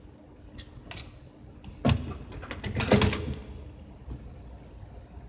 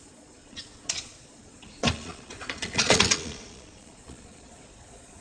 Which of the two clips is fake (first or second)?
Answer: second